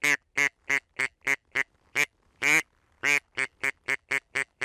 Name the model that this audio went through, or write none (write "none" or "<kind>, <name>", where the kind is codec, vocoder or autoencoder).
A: none